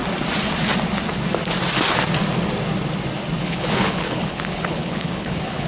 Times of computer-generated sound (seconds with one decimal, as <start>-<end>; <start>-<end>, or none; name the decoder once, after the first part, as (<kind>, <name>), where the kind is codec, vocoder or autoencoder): 3.4-5.7 (codec, HILCodec)